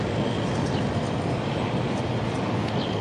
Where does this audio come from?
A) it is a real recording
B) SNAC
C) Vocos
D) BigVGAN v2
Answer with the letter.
A